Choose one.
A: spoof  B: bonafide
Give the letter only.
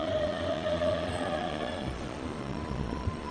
A